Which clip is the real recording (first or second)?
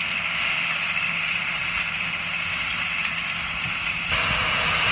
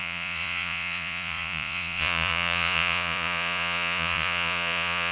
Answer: first